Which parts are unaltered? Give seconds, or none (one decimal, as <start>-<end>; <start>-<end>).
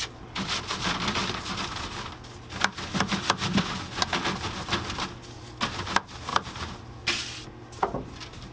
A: 0.0-6.3; 6.9-8.5